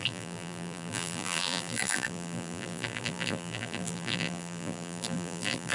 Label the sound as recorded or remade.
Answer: remade